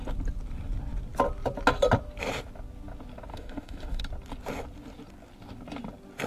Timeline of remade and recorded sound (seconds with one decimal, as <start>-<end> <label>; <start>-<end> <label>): 0.0-3.3 recorded; 3.3-4.0 remade; 4.0-6.3 recorded